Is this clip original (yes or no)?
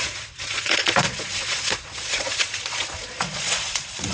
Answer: no